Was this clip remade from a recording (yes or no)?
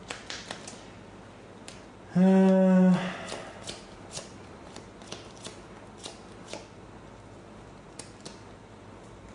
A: no